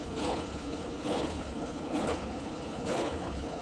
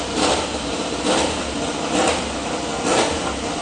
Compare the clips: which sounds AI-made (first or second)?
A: first